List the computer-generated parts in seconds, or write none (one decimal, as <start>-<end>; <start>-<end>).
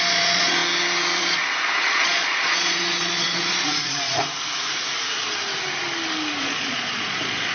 0.0-0.6; 1.2-4.2; 6.4-7.5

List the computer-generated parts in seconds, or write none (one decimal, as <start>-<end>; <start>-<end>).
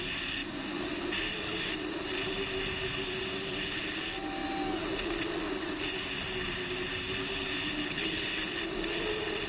7.8-8.4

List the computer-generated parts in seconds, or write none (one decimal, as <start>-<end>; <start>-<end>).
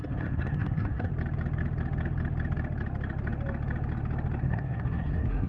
0.0-1.1; 4.4-5.5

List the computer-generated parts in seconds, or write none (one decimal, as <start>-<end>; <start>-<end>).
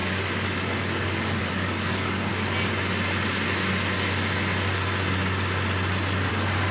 0.0-2.3; 6.3-6.7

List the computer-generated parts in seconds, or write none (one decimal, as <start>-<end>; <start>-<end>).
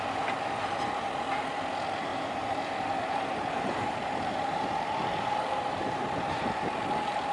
2.1-6.5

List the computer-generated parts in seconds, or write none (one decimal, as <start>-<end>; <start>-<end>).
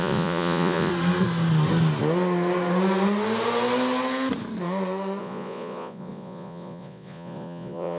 0.0-0.9; 5.2-8.0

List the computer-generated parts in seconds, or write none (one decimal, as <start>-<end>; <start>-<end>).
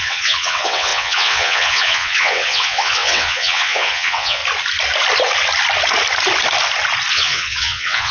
0.0-4.4; 7.1-8.1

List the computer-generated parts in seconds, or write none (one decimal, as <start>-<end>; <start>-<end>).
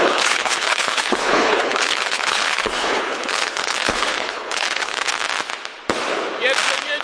0.0-5.1